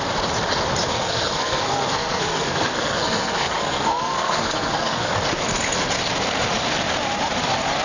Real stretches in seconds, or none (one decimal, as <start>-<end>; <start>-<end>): 0.0-0.9; 5.1-7.8